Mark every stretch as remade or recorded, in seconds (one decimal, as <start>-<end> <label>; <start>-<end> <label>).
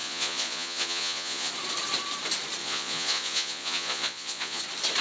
0.0-1.5 remade; 1.5-2.6 recorded; 2.6-4.6 remade; 4.6-5.0 recorded